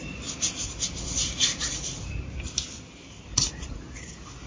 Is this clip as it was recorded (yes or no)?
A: yes